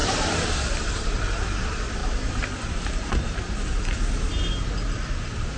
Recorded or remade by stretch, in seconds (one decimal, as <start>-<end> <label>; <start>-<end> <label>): 0.0-1.2 remade; 1.2-2.0 recorded; 2.0-4.3 remade; 4.3-5.6 recorded